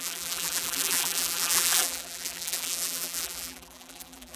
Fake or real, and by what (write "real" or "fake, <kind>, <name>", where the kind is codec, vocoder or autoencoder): fake, vocoder, BigVGAN v2